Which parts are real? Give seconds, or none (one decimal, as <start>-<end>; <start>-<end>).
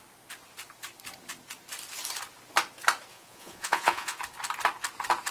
0.0-3.1; 4.2-5.3